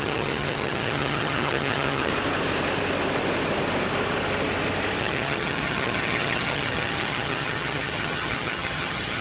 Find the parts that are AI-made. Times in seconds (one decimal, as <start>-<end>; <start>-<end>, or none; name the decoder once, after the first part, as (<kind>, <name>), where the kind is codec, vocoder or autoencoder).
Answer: 0.0-2.1 (vocoder, HiFi-GAN); 5.0-9.2